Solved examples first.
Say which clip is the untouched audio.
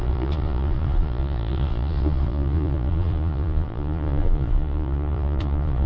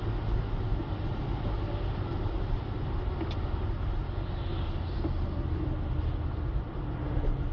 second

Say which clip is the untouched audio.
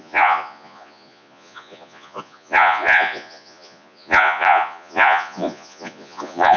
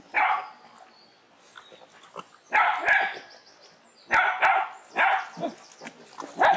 second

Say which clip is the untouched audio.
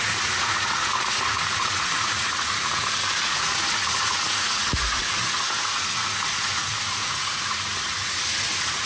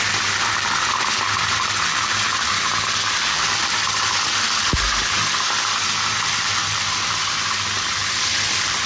second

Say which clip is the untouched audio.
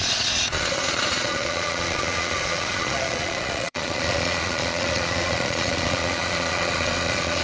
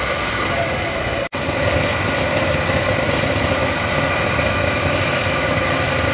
second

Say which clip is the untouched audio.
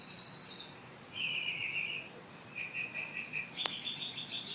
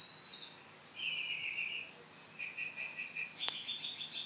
second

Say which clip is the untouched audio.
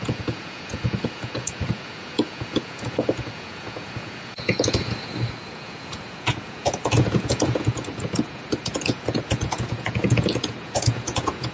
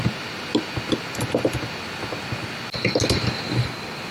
second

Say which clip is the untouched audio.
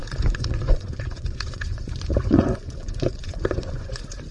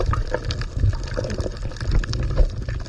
second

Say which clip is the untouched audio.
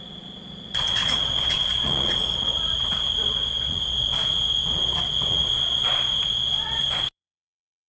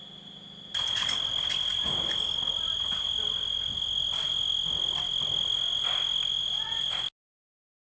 second